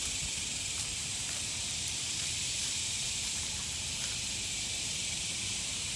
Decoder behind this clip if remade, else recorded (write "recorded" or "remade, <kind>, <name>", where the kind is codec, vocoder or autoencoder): remade, vocoder, BigVGAN v2